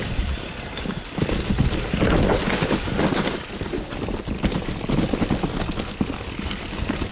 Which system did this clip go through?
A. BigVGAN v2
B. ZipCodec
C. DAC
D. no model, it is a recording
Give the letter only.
D